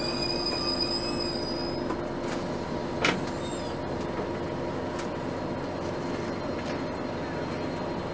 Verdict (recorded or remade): recorded